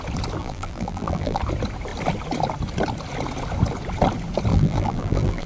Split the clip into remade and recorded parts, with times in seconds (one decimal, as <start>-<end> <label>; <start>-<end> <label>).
0.0-0.4 recorded; 0.4-1.4 remade; 1.4-4.5 recorded; 4.5-5.5 remade